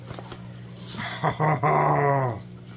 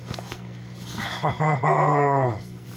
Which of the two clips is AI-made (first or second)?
second